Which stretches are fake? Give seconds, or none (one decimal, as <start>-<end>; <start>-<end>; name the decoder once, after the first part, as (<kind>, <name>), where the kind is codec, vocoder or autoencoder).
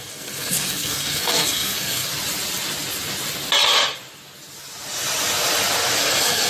0.0-2.1 (codec, SNAC); 6.0-6.5